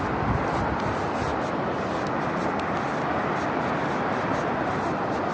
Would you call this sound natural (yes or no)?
yes